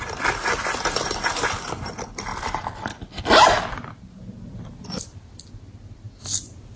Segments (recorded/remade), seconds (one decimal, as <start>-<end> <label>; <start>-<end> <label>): 0.0-6.8 recorded